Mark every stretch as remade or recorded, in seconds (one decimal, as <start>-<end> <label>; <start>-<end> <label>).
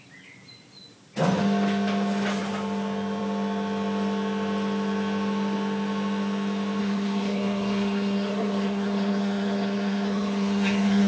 0.0-6.8 recorded; 6.8-11.1 remade